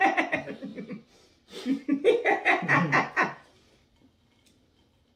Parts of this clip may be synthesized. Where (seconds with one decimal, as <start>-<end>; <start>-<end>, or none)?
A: none